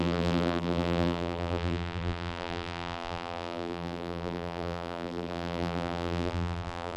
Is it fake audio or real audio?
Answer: fake